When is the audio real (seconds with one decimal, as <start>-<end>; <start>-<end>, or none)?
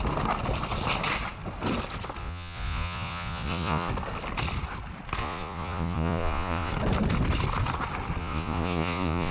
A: 0.0-2.2; 3.9-5.2; 6.7-8.2